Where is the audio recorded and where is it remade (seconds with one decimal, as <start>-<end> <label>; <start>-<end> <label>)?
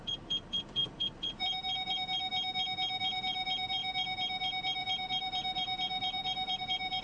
0.0-2.3 remade; 2.3-3.0 recorded; 3.0-7.0 remade